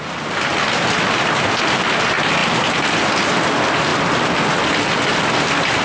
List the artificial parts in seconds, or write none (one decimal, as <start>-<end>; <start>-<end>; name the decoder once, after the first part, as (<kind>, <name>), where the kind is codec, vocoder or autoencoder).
none